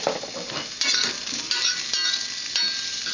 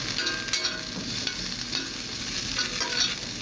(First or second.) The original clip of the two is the second